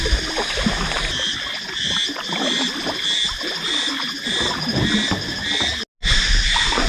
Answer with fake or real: real